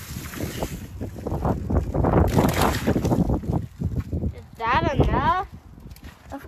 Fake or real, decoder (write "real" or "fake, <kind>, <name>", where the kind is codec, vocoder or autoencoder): real